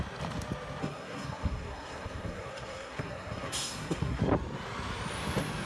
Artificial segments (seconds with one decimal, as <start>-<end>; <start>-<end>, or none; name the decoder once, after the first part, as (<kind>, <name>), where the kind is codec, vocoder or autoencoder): 0.8-4.2 (codec, SNAC)